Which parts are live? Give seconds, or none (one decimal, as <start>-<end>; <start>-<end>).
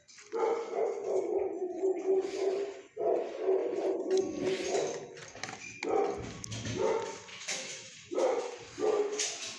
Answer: 0.0-7.3; 7.9-9.6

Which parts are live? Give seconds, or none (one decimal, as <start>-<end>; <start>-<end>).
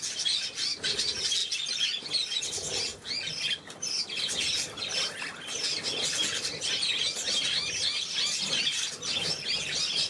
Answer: 0.0-10.1